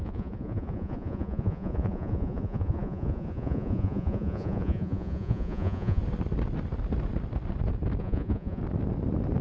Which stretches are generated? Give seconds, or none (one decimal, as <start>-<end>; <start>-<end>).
0.0-6.0; 8.0-8.6